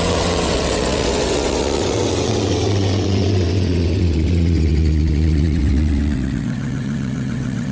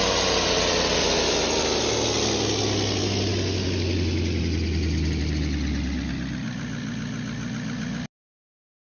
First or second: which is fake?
first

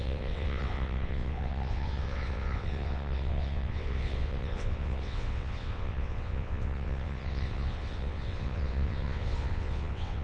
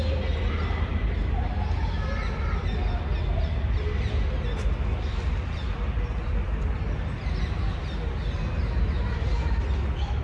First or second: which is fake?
first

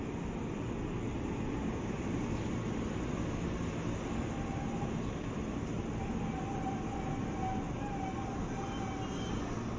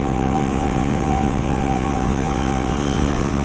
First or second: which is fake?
second